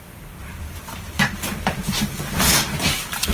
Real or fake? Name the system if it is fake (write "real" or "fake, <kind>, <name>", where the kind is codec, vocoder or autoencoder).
fake, vocoder, BigVGAN v2